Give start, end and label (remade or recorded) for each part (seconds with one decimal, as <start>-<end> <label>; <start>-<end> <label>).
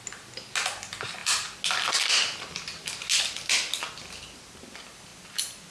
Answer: 0.0-5.7 recorded